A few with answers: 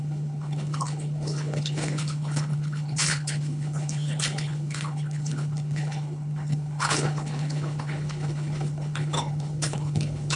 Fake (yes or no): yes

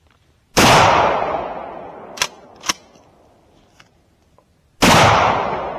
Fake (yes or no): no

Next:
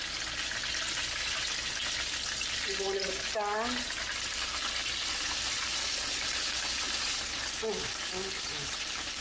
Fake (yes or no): no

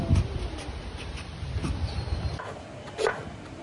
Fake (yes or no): no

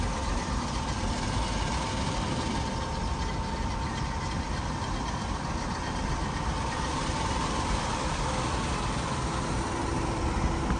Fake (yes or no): no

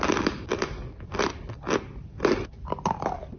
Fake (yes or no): no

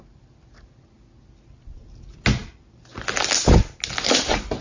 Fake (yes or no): no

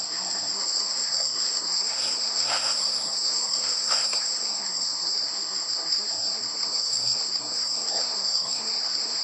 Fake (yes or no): yes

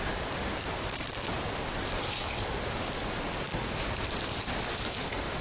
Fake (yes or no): no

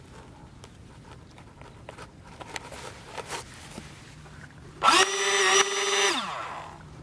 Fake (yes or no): no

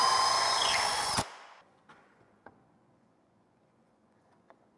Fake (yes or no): yes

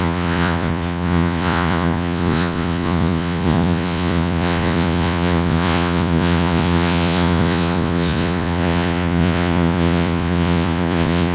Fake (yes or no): yes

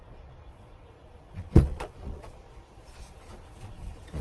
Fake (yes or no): yes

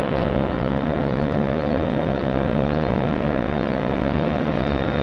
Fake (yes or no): yes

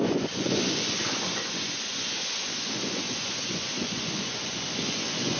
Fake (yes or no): yes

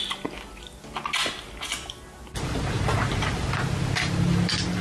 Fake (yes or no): no